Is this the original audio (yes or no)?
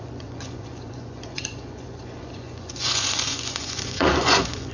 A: no